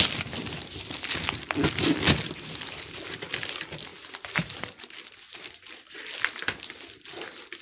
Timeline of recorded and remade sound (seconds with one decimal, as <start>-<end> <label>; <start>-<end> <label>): 0.0-7.6 recorded